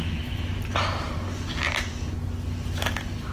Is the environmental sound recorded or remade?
recorded